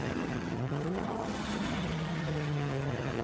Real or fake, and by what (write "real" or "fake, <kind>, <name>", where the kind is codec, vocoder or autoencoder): fake, vocoder, HiFi-GAN